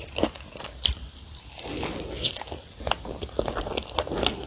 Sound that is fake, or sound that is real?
real